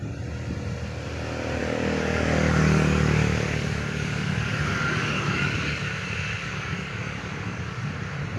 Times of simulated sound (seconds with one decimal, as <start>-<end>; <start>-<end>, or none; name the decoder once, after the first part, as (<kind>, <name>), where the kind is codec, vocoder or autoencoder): 1.6-5.8 (codec, DAC); 6.4-7.9

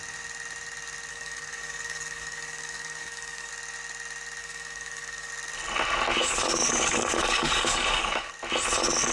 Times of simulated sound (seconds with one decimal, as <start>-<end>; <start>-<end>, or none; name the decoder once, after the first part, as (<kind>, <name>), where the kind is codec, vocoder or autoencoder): 1.1-3.5 (codec, DAC); 4.4-5.3; 6.2-8.3

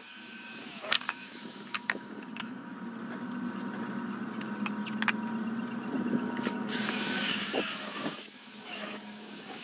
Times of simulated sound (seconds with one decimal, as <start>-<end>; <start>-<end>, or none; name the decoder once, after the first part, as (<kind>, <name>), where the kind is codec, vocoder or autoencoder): 0.0-2.7 (codec, DAC); 6.1-9.6

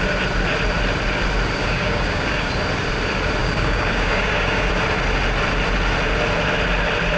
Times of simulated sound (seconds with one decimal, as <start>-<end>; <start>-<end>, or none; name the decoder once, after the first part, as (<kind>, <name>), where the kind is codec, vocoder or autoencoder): 1.6-2.5 (codec, DAC); 3.4-4.7

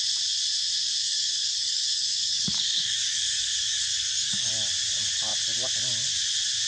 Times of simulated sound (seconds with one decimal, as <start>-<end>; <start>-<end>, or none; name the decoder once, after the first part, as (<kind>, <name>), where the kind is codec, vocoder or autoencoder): 1.0-4.5 (codec, DAC)

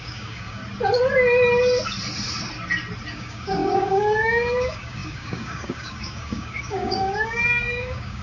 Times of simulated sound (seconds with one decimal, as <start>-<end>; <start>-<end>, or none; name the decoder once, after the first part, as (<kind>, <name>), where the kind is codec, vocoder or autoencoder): 0.0-0.6 (codec, DAC); 3.1-8.2